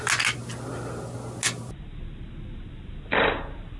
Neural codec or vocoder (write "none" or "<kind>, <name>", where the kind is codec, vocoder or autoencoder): none